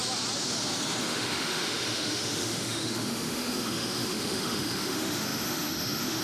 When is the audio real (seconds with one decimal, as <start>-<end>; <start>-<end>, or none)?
0.0-1.0